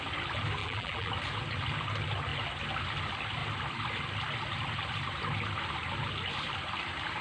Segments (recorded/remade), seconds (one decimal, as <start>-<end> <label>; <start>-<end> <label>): 0.0-0.6 recorded; 0.6-1.1 remade; 1.1-7.2 recorded